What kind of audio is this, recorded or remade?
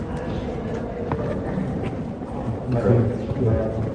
recorded